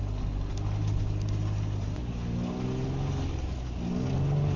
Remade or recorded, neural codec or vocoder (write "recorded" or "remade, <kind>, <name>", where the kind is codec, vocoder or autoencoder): recorded